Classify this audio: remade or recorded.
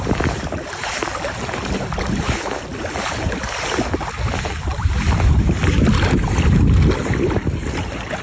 recorded